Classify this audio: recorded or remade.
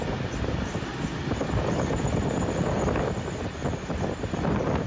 recorded